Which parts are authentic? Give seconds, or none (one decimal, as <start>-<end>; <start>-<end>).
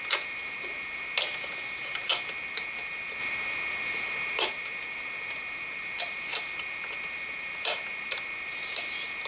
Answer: 0.0-9.3